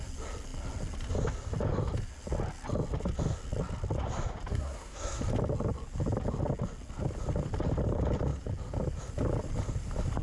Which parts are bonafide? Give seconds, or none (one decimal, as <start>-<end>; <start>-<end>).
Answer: 0.0-4.5; 5.2-10.2